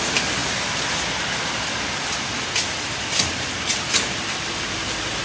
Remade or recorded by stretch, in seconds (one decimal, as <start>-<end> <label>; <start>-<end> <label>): 0.0-5.2 recorded